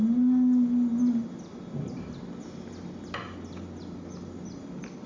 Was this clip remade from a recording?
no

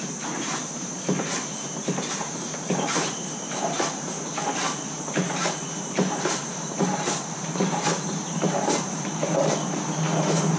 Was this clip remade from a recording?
yes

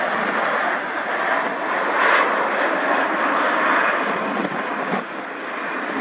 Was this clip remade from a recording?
no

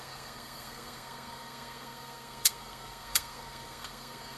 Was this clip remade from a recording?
yes